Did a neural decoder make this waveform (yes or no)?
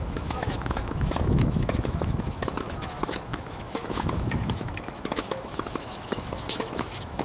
yes